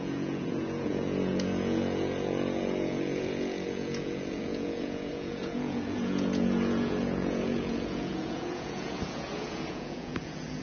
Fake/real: fake